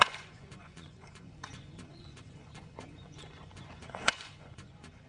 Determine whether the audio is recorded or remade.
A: remade